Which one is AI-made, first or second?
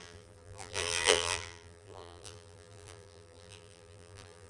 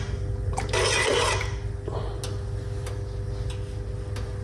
first